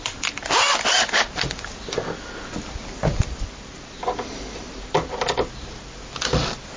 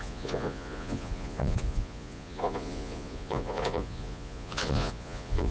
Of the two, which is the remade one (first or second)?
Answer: second